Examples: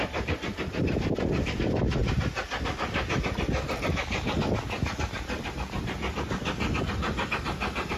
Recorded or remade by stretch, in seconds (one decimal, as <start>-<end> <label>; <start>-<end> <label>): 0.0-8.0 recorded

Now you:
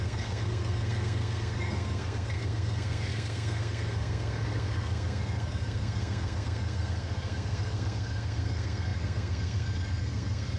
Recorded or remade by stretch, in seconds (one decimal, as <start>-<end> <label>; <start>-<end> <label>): 0.0-10.6 remade

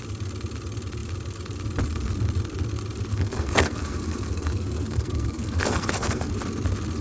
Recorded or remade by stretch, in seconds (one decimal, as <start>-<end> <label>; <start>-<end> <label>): 0.0-3.1 recorded; 3.1-6.3 remade; 6.3-7.0 recorded